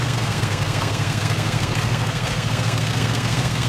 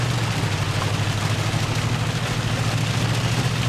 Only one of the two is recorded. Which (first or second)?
second